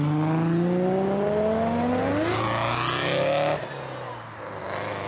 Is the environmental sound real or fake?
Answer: real